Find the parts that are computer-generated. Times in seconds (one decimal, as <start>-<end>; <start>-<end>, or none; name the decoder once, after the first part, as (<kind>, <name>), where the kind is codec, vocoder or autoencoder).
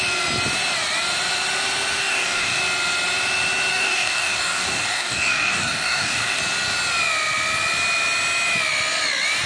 2.0-2.6 (codec, DAC); 3.7-6.4